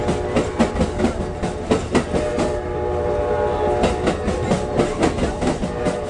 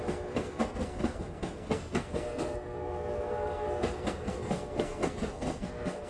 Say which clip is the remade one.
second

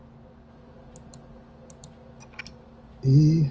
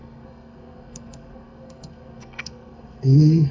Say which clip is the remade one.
second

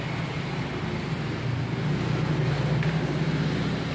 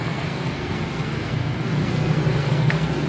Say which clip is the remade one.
second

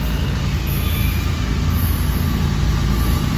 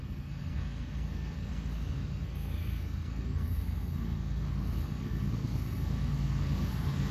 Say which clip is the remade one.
second